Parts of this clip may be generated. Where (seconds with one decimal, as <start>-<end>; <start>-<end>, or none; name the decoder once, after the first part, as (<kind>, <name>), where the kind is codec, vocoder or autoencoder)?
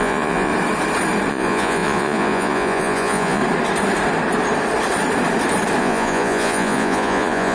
0.0-0.5 (vocoder, Vocos); 1.3-3.4; 5.8-7.5